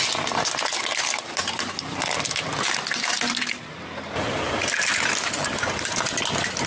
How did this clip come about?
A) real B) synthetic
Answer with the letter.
A